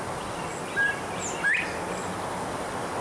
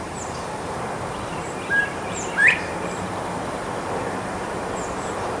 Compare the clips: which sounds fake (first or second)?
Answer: second